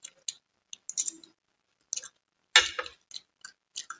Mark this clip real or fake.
real